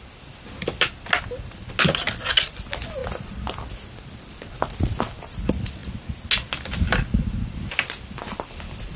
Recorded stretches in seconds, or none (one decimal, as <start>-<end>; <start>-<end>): 0.0-9.0